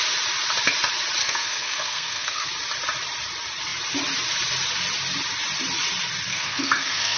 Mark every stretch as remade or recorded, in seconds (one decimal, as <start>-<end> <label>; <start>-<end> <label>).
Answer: 0.0-1.2 recorded; 1.2-2.5 remade; 2.5-6.3 recorded; 6.3-7.2 remade